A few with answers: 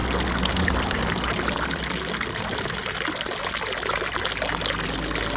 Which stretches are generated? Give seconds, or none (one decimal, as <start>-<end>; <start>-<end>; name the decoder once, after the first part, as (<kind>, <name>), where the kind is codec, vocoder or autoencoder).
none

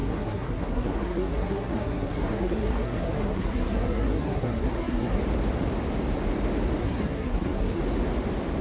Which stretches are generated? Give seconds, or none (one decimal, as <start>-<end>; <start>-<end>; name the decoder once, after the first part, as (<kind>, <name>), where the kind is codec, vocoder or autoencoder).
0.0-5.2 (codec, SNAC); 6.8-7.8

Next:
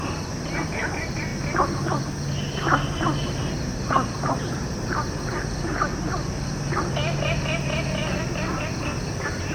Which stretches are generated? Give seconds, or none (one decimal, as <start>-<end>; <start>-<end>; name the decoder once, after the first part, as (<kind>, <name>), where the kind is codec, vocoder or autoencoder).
none